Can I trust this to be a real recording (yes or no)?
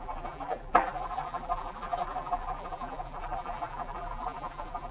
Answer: no